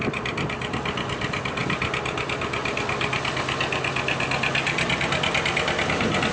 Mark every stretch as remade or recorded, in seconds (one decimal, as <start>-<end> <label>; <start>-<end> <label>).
0.0-6.3 recorded